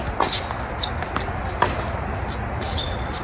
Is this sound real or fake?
real